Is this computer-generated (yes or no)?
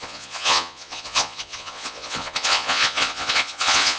yes